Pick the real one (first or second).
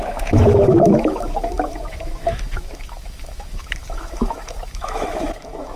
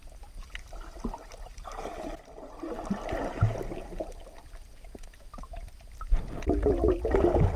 second